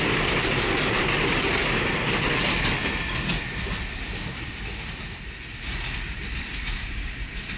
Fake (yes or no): no